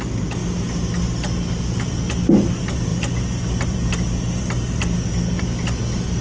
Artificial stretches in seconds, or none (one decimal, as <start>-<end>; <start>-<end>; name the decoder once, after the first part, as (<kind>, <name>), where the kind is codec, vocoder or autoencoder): none